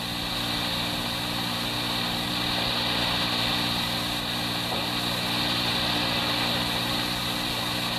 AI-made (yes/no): no